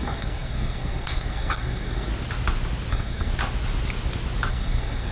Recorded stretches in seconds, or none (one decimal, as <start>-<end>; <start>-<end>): 2.1-2.9; 3.3-4.5